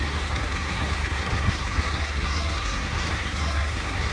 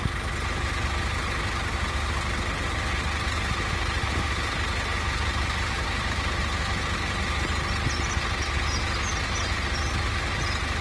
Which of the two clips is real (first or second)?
second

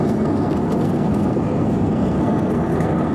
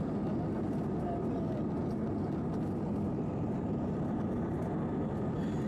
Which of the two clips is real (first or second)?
second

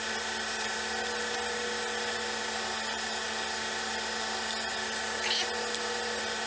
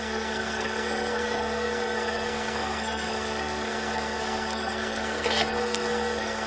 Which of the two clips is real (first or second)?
first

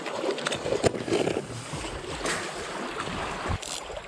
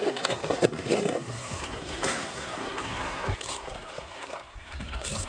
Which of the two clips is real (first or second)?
first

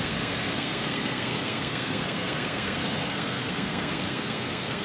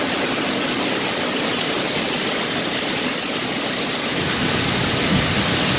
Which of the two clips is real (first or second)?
second